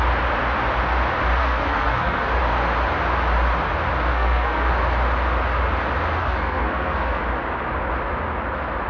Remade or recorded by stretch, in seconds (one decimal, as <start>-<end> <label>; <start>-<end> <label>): 0.0-1.4 recorded; 1.4-2.3 remade; 2.3-4.1 recorded; 4.1-4.7 remade; 4.7-6.2 recorded; 6.2-7.2 remade; 7.2-8.9 recorded